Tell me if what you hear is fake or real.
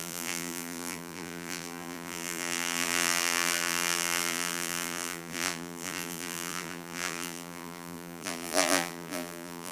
fake